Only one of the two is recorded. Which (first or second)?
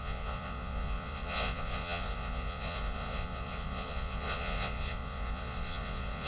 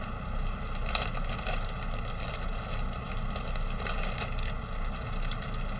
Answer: second